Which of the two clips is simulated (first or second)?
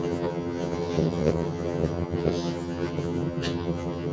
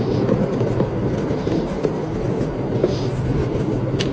first